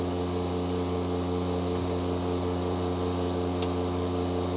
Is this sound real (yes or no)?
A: yes